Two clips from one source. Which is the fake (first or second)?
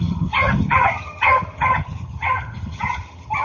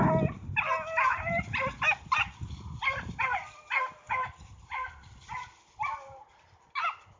first